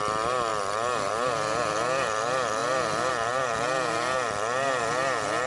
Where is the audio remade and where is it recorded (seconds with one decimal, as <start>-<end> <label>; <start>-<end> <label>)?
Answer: 0.0-5.5 recorded